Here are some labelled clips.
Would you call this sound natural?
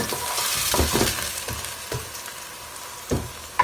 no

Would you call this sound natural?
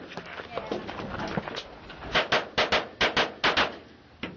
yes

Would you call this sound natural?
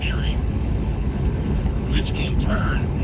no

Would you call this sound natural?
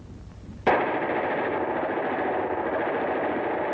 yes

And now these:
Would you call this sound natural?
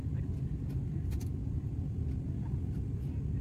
yes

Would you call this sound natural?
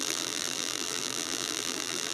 no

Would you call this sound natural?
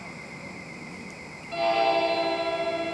yes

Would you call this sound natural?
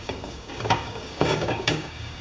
no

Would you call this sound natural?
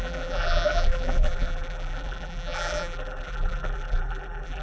no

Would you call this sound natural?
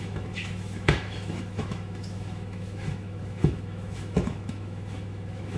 no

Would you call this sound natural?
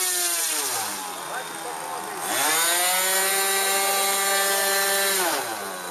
yes